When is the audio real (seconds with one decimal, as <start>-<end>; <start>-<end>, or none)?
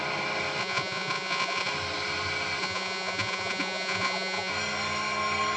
0.0-0.6; 1.7-2.6; 4.5-5.6